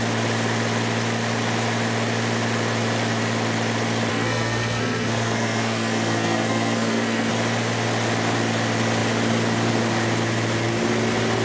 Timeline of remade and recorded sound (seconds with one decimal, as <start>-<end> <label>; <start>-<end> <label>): 0.0-4.1 recorded; 4.1-7.3 remade; 7.3-11.4 recorded